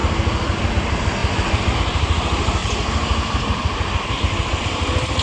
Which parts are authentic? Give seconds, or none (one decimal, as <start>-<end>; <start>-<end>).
0.0-5.2